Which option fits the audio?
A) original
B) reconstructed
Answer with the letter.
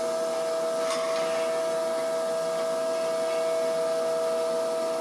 A